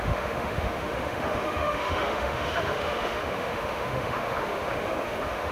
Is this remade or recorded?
remade